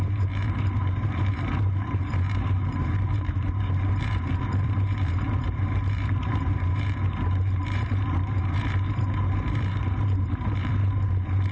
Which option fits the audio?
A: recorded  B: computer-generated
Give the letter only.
B